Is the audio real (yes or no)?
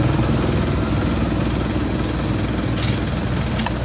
yes